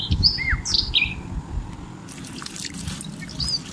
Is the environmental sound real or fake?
real